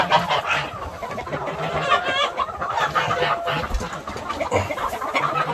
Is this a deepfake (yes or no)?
no